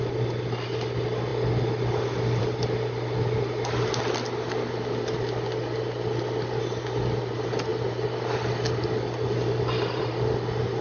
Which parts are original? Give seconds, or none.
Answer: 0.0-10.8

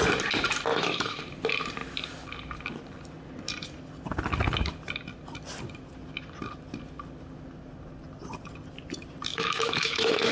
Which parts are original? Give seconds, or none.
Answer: 0.0-0.7; 1.2-9.3

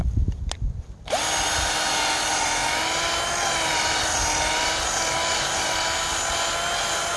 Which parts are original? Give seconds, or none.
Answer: 0.0-7.2

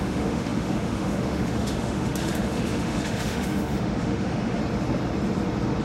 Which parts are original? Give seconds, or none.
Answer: 4.6-5.8

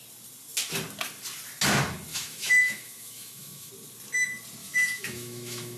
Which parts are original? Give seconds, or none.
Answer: 0.0-2.1; 3.7-4.6